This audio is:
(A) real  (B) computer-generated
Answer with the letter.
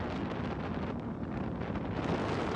A